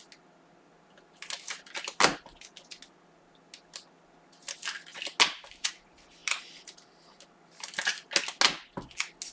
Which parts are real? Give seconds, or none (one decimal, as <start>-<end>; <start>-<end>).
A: 0.0-6.2; 7.0-9.3